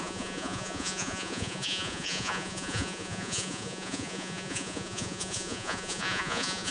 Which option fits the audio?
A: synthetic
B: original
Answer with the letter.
A